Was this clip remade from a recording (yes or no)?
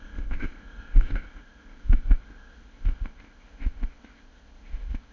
yes